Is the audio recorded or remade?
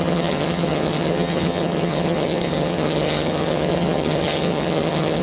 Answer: remade